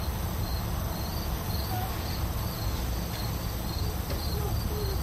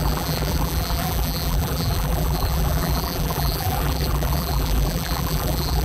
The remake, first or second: second